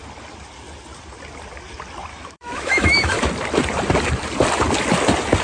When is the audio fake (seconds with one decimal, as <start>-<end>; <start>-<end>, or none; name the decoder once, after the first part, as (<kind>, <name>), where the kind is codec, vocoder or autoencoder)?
2.1-3.2 (autoencoder, DAC-VAE)